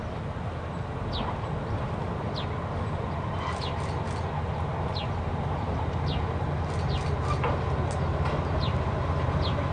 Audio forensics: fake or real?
real